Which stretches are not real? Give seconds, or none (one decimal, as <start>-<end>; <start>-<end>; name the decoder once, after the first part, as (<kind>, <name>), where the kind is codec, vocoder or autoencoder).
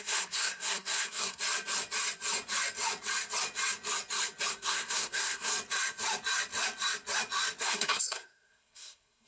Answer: 0.0-1.4 (codec, SNAC); 4.5-5.5; 7.6-9.3